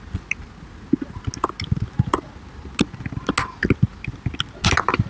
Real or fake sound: real